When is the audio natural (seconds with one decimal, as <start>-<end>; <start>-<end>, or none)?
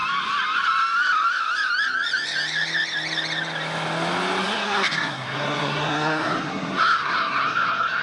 0.0-4.4